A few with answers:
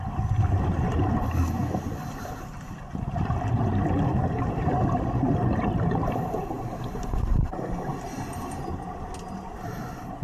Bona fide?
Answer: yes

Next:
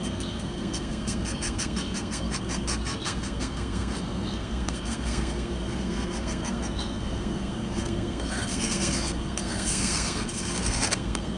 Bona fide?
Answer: no